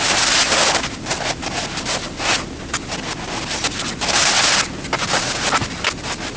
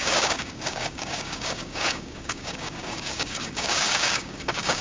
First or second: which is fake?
second